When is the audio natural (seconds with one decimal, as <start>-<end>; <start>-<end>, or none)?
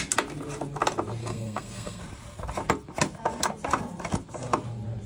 0.0-1.2; 2.0-5.1